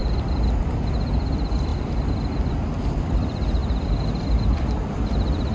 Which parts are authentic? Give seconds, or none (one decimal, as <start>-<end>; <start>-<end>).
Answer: 0.0-0.6